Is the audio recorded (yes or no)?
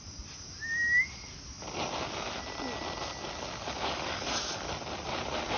yes